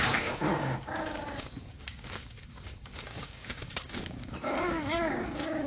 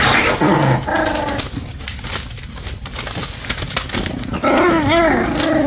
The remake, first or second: first